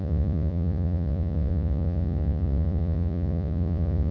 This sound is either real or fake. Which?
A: fake